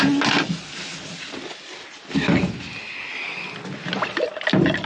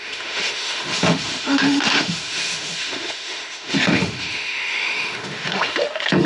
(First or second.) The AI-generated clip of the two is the second